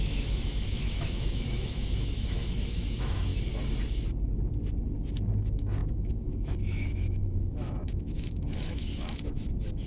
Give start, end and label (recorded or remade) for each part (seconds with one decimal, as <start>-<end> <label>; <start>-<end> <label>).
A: 0.0-3.3 remade; 3.3-5.3 recorded; 5.3-9.9 remade